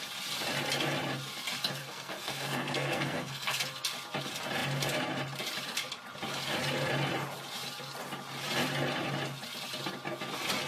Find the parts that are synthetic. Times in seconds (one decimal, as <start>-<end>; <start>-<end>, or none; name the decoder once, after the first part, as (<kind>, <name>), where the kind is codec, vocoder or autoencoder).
1.8-3.6 (codec, SNAC)